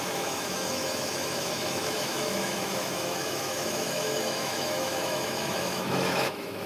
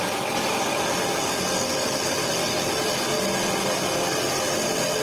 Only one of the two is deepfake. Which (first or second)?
first